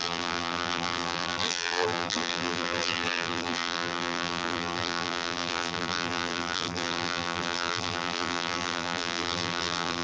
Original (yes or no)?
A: no